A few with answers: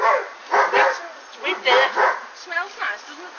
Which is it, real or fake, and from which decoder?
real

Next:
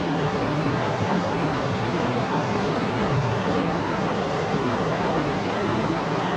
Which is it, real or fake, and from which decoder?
fake, codec, SNAC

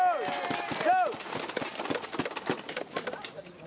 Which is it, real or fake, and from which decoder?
real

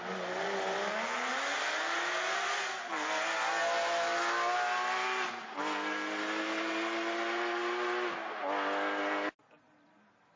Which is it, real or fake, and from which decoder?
real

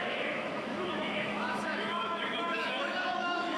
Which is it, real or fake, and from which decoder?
fake, autoencoder, DAC-VAE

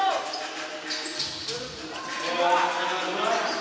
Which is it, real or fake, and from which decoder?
real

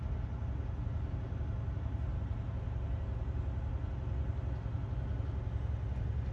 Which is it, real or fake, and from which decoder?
real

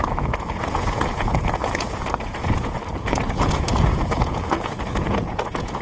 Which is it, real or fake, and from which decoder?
fake, vocoder, Vocos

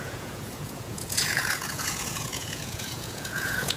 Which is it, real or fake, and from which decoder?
fake, vocoder, Vocos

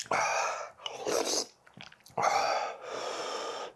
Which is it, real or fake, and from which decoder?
real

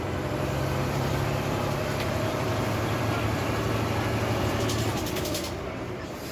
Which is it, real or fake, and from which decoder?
fake, vocoder, BigVGAN v2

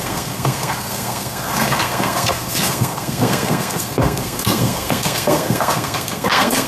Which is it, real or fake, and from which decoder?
fake, codec, SNAC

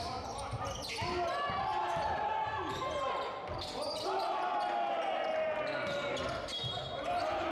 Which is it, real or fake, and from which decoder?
real